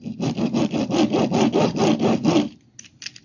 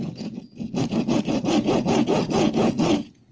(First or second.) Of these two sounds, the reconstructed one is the second